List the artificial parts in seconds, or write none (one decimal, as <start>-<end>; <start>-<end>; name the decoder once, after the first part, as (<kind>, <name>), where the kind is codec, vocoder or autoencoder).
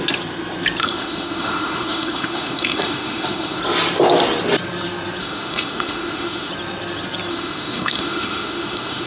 0.8-3.6 (autoencoder, DAC-VAE); 5.2-6.5; 7.3-9.1